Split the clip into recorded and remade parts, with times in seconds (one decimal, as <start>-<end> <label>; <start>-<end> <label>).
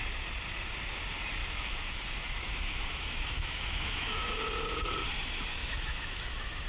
0.0-1.4 recorded; 1.4-4.3 remade; 4.3-5.6 recorded; 5.6-6.7 remade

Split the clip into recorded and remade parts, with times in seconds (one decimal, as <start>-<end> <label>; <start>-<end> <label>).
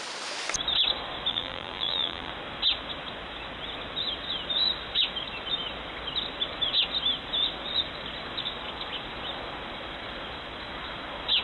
0.0-1.3 recorded; 1.3-2.3 remade; 2.3-11.4 recorded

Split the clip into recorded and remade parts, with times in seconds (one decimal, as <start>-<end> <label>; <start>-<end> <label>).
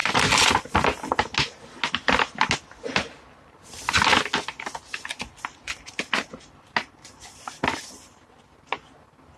0.0-9.4 recorded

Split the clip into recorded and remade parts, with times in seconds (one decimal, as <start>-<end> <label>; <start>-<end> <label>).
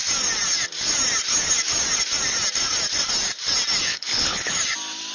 0.0-3.9 recorded; 3.9-4.5 remade; 4.5-5.1 recorded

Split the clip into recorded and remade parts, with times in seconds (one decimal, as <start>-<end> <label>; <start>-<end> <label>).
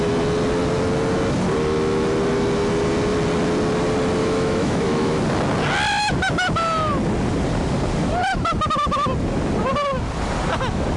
0.0-4.2 recorded; 4.2-5.2 remade; 5.2-11.0 recorded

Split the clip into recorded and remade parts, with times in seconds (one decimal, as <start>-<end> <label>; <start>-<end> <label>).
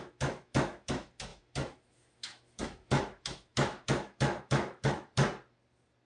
0.0-5.1 remade; 5.1-6.1 recorded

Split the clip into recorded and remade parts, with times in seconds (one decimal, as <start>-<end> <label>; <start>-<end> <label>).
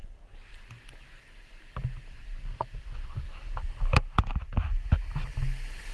0.0-0.5 recorded; 0.5-3.5 remade; 3.5-5.9 recorded